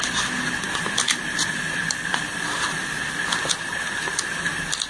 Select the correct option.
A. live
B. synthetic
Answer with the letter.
A